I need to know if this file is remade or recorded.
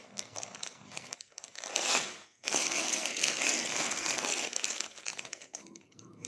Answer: remade